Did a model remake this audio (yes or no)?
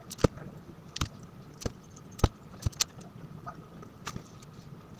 no